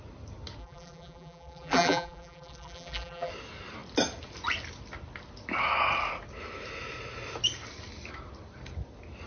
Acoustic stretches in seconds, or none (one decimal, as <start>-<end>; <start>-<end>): 0.0-0.6; 3.3-9.3